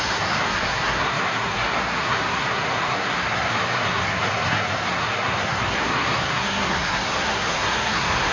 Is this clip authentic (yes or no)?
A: no